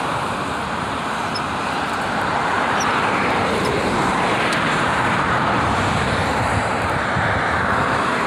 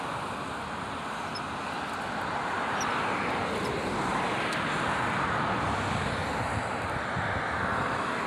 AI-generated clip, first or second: first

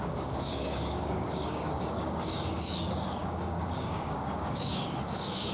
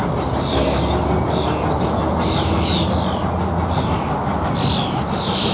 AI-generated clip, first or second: first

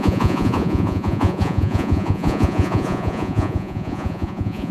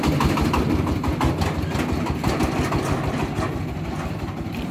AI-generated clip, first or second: first